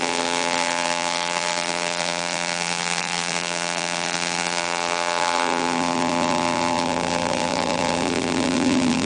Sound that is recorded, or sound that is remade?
remade